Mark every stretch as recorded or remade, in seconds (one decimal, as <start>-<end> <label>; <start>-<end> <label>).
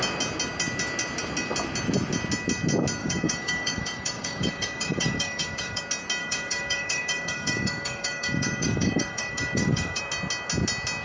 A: 0.0-3.0 recorded; 3.0-5.8 remade; 5.8-6.2 recorded; 6.2-10.0 remade; 10.0-11.0 recorded